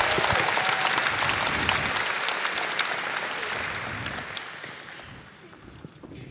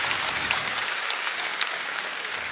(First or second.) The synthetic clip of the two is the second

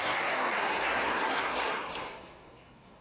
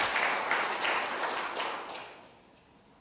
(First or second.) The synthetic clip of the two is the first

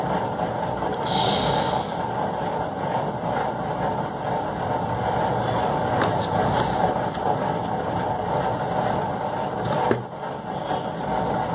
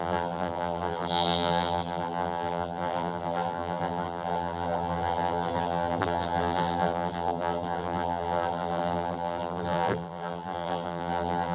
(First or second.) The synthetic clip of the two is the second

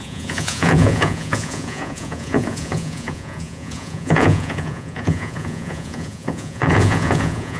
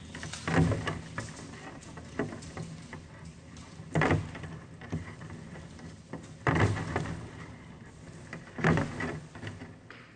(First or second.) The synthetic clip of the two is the first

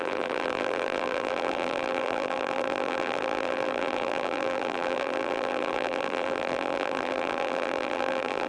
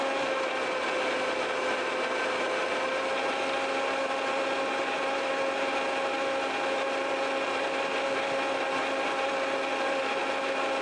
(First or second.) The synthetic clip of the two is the first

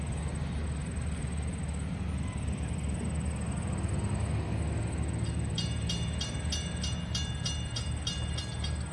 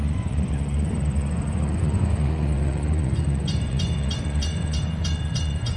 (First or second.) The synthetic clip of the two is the second